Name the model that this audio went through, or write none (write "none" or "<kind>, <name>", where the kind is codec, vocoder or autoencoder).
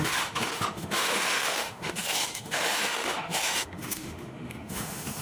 autoencoder, DAC-VAE